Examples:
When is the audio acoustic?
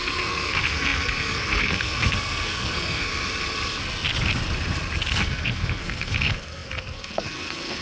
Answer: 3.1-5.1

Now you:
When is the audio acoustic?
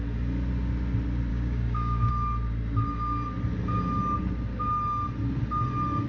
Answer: 0.0-1.3; 2.1-6.1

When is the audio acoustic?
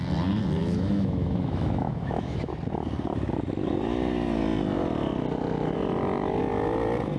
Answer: 0.0-0.6; 2.5-7.2